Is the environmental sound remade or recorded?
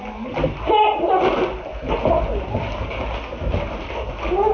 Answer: recorded